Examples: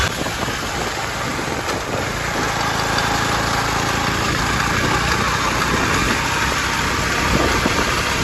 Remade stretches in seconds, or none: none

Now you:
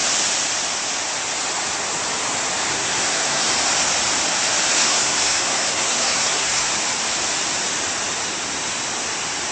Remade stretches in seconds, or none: 2.7-3.5 (codec, SNAC); 4.8-6.7

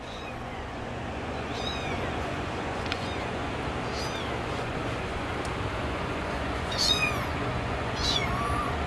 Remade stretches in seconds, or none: 0.0-3.5 (vocoder, Vocos); 4.5-5.3; 5.8-8.9

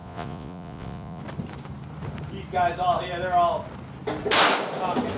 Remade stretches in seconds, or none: 0.0-1.2 (vocoder, Vocos)